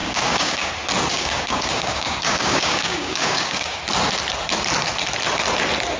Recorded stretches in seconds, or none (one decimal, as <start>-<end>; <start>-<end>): 0.7-1.1; 3.8-6.0